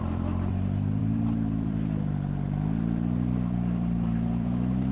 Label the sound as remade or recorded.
remade